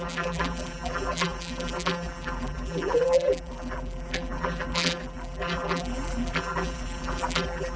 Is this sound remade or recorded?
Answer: remade